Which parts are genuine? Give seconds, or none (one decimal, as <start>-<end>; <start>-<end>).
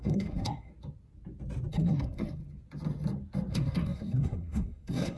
0.7-1.7; 2.4-3.5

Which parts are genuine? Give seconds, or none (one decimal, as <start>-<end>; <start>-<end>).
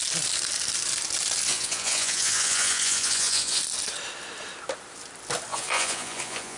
0.0-1.5; 3.6-5.5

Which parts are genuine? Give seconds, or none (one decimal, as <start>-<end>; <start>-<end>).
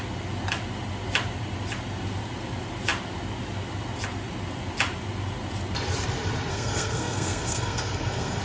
0.0-6.5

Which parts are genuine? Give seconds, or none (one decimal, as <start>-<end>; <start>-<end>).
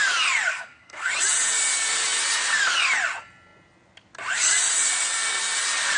0.0-0.5; 1.1-6.0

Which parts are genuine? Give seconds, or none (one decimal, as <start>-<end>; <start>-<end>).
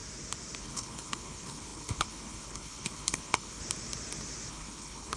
0.0-0.6; 3.6-4.5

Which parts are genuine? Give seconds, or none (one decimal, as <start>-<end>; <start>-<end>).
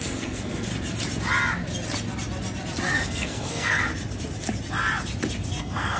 0.7-2.9; 3.9-5.6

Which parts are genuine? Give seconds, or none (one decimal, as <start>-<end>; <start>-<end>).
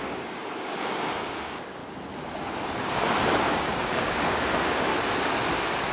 1.8-3.5; 4.9-5.9